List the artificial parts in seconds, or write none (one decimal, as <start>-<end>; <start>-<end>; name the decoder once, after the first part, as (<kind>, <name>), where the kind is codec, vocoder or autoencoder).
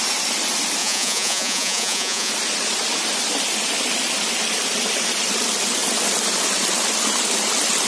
0.8-2.3 (vocoder, Vocos)